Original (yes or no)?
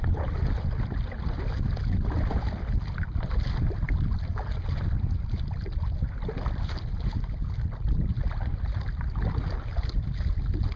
yes